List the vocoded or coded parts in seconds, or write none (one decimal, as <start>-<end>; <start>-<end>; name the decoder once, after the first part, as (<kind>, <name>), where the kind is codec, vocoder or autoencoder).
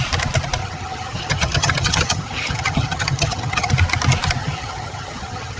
0.6-3.7 (vocoder, HiFi-GAN); 4.4-5.6